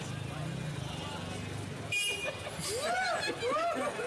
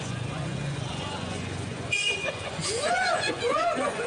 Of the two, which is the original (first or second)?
first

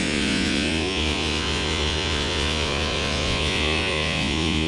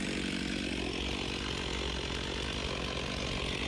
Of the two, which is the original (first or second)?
second